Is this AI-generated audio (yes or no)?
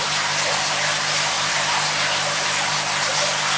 no